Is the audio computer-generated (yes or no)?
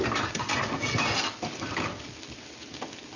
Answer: no